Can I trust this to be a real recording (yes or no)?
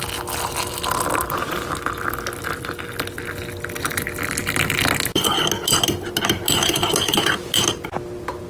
yes